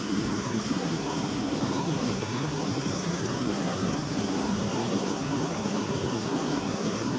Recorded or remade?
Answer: remade